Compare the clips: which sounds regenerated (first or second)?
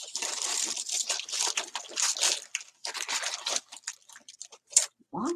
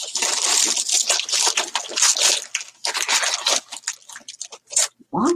first